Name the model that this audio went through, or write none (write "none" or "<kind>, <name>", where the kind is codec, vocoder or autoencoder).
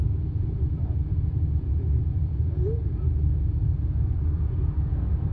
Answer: vocoder, Vocos